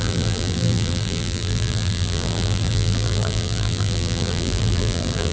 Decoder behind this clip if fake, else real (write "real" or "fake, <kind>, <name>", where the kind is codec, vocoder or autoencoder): fake, vocoder, BigVGAN v2